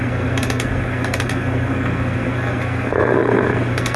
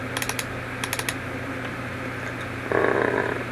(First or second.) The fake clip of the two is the first